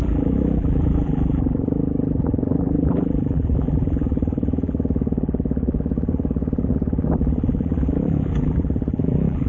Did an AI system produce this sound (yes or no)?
yes